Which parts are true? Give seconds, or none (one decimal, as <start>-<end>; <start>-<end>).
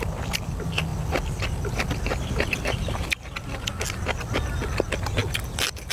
0.0-5.9